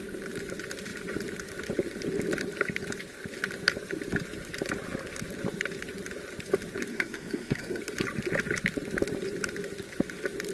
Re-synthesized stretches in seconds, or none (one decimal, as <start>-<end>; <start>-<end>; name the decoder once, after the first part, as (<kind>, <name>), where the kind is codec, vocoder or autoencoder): 6.9-7.8 (codec, SNAC)